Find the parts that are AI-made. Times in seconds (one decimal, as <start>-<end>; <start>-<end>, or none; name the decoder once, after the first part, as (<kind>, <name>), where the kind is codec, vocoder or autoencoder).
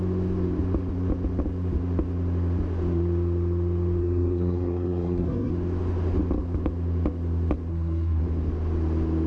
4.0-5.5 (codec, SNAC); 7.7-8.2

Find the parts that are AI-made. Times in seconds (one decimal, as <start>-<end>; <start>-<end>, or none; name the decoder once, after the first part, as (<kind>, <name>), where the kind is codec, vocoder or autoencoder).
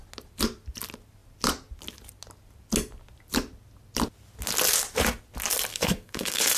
5.7-6.6 (codec, SNAC)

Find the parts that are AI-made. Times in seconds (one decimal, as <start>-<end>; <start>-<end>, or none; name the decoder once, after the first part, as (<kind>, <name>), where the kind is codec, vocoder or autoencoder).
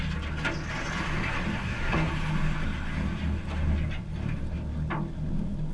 1.6-2.1 (codec, SNAC)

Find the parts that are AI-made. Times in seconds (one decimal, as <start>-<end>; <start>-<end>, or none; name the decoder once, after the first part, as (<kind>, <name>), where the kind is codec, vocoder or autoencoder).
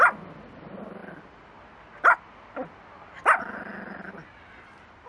none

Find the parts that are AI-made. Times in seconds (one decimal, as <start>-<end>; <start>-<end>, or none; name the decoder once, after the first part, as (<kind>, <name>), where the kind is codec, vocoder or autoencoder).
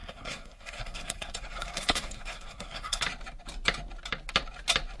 0.0-3.0 (codec, SNAC)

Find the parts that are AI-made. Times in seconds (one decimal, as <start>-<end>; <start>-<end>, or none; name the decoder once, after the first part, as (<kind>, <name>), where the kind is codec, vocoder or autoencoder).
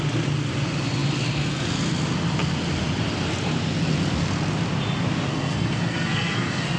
5.3-6.8 (codec, SNAC)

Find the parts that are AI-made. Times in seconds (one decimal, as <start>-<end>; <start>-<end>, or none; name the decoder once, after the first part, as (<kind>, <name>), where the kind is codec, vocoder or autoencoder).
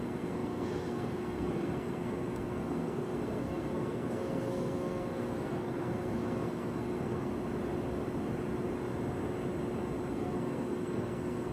0.0-7.3 (codec, SNAC); 10.1-11.5